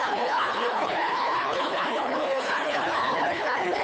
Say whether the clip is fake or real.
fake